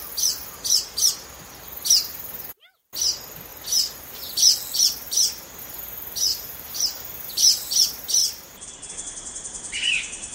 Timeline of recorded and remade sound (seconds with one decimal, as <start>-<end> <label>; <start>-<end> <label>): 0.0-6.3 recorded; 6.3-7.7 remade; 7.7-8.2 recorded; 8.2-8.9 remade; 8.9-10.3 recorded

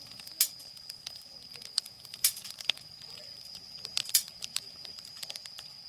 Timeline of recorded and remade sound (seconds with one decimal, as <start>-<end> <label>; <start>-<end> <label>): 0.0-1.7 recorded; 1.7-5.2 remade; 5.2-5.9 recorded